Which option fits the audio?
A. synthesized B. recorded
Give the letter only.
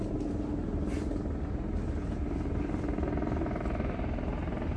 A